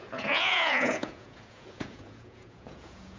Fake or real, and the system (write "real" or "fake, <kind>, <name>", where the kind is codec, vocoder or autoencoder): fake, vocoder, Vocos